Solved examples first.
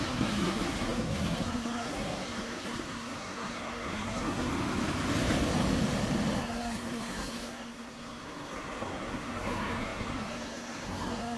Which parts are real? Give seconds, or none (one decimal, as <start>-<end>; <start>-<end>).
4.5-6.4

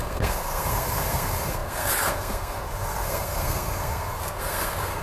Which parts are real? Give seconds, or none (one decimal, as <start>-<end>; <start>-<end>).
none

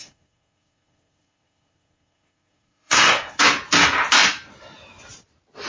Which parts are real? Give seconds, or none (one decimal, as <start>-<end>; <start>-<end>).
3.4-5.7